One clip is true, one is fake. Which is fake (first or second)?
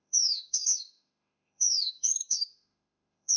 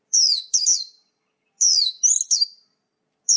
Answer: first